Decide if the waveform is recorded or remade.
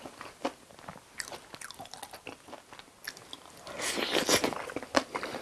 recorded